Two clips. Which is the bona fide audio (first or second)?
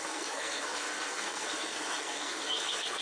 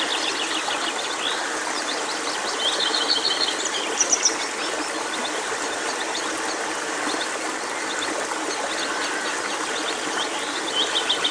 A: second